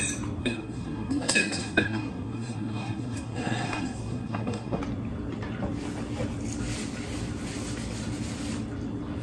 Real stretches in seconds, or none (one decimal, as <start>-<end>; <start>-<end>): 0.0-0.4; 4.8-9.2